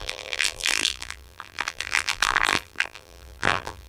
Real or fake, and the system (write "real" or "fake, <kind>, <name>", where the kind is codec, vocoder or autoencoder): fake, vocoder, BigVGAN v2